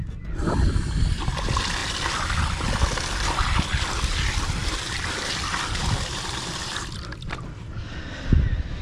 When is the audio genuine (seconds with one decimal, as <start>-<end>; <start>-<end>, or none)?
0.0-4.6; 8.0-8.8